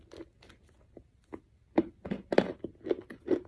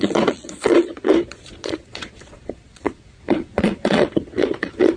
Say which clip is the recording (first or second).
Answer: first